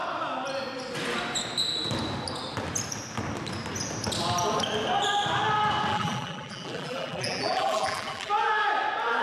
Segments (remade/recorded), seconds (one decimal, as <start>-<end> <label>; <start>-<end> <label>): 0.0-5.9 recorded; 5.9-8.3 remade; 8.3-9.2 recorded